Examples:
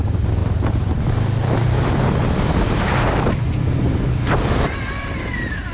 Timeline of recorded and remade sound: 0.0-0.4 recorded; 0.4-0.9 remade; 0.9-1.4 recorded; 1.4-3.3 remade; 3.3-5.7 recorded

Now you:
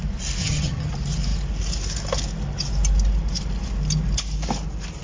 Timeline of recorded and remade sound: 0.0-0.4 recorded; 0.4-0.9 remade; 0.9-5.0 recorded

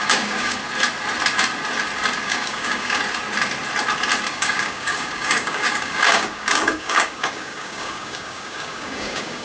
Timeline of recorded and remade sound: 0.0-0.6 remade; 0.6-2.2 recorded; 2.2-3.0 remade; 3.0-4.3 recorded; 4.3-9.4 remade

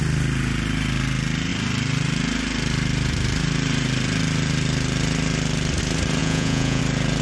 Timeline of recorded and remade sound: 0.0-6.2 recorded; 6.2-6.8 remade; 6.8-7.2 recorded

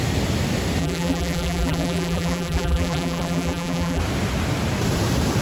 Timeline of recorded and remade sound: 0.0-0.8 recorded; 0.8-4.0 remade; 4.0-5.4 recorded

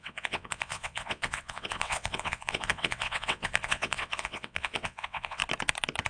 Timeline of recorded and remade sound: 0.0-5.4 remade; 5.4-6.1 recorded

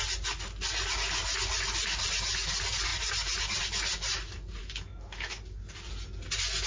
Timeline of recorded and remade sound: 0.0-4.6 recorded; 4.6-5.4 remade; 5.4-6.7 recorded

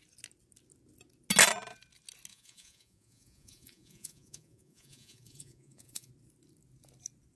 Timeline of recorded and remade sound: 0.0-2.3 recorded; 2.3-6.1 remade; 6.1-7.4 recorded